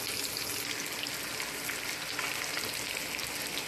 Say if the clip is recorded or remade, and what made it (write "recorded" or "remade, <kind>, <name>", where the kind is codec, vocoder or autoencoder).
recorded